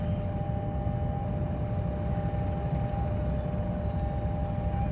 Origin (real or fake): real